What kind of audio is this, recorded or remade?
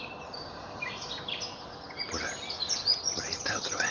recorded